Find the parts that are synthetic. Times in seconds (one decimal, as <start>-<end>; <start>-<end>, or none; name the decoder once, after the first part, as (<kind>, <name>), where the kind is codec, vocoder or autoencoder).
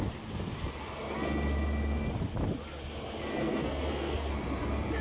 3.4-4.3 (codec, SNAC)